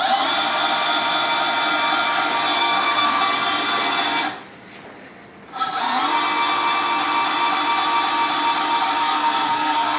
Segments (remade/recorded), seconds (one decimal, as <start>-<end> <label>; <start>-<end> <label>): 0.0-2.6 recorded; 2.6-3.2 remade; 3.2-9.0 recorded; 9.0-10.0 remade